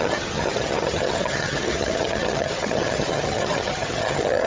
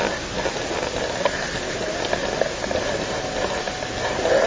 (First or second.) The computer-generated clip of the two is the first